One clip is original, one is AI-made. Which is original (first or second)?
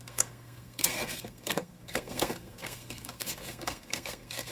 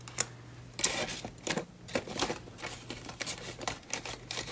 second